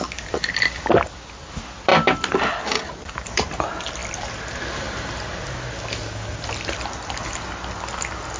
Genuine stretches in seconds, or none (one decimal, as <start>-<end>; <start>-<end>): 0.0-8.4